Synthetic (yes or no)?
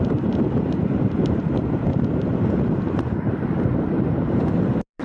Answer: yes